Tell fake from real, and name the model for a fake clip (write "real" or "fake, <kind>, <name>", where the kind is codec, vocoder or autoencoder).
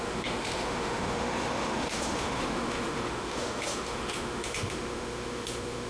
fake, autoencoder, DAC-VAE